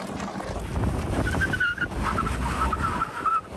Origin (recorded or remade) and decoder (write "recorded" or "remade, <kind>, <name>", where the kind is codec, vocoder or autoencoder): recorded